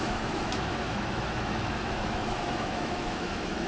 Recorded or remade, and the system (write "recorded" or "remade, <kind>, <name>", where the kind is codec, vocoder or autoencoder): remade, autoencoder, DAC-VAE